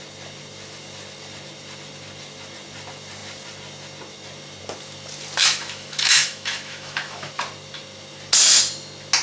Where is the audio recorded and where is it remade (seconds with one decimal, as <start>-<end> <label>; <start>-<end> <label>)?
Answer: 0.0-5.4 recorded; 5.4-7.3 remade; 7.3-9.2 recorded